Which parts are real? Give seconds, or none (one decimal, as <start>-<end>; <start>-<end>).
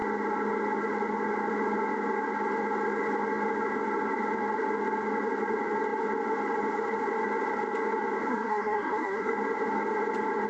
0.0-8.3; 9.3-10.5